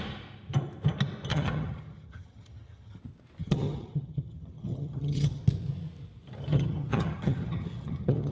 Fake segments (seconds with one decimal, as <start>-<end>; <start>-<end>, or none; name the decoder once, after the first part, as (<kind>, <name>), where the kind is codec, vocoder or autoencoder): 1.3-3.0 (vocoder, HiFi-GAN); 3.4-5.4; 6.5-8.3